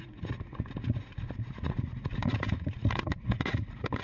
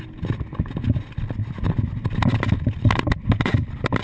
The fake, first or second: first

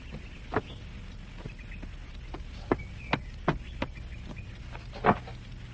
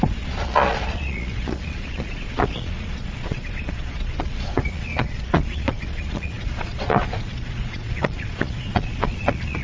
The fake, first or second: second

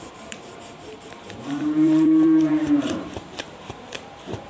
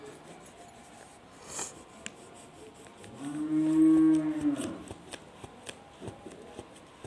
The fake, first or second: first